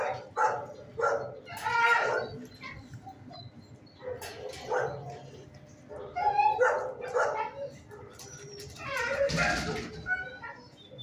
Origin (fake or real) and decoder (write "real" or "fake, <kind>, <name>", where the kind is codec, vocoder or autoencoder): real